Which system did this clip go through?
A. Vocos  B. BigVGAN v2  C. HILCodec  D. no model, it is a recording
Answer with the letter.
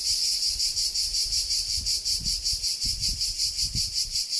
B